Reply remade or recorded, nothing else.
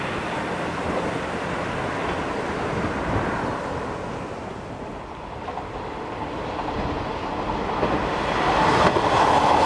recorded